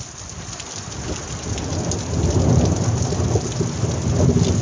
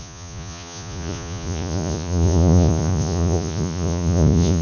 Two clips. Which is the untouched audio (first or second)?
first